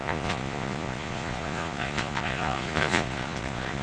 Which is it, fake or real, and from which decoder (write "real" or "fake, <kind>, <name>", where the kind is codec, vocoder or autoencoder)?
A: fake, vocoder, Vocos